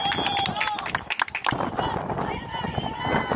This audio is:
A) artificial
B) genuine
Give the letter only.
B